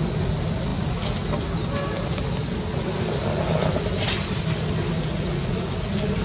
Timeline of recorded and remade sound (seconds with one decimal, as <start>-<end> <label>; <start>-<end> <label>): 0.0-5.1 recorded; 5.1-5.7 remade; 5.7-6.2 recorded